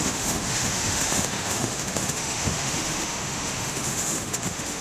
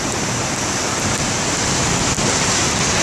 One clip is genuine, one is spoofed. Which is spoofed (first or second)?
first